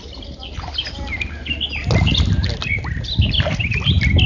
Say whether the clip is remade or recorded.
recorded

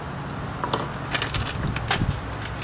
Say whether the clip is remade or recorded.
recorded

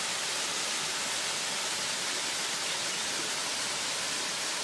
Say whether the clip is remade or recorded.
recorded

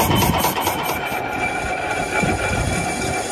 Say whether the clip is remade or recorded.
recorded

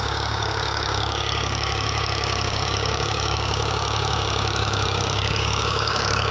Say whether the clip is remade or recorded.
remade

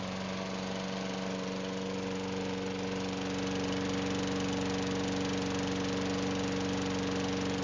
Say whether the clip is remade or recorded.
recorded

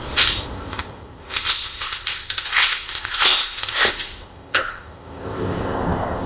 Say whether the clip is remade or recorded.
remade